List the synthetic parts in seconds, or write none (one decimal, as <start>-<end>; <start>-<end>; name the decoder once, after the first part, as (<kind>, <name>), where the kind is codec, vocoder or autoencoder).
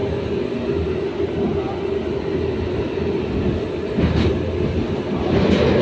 none